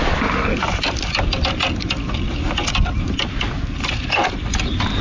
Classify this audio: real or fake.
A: real